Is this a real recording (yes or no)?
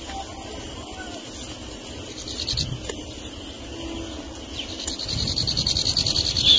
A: yes